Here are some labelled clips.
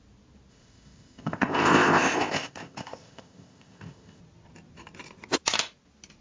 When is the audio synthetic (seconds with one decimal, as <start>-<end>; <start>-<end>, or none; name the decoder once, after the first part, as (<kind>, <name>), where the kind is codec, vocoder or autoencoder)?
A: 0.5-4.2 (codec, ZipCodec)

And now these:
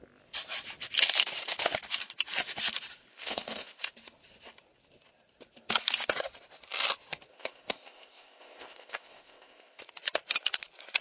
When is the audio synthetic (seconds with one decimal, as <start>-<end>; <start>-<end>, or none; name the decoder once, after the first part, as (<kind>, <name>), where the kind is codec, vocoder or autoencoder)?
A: 3.1-3.9 (codec, ZipCodec); 7.3-9.8

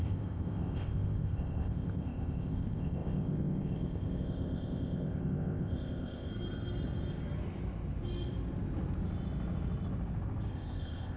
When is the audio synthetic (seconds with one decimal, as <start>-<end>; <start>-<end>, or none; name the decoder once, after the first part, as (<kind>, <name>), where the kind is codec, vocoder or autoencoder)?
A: 0.0-6.3 (codec, ZipCodec); 10.5-11.2

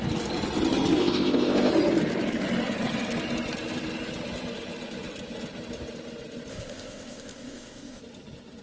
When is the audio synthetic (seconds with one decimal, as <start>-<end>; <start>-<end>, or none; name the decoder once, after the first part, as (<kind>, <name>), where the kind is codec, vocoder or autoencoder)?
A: 1.0-1.7 (codec, ZipCodec); 6.5-8.0